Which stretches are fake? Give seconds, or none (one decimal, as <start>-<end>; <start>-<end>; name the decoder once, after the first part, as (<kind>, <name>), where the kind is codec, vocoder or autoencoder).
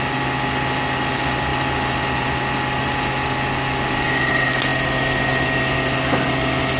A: none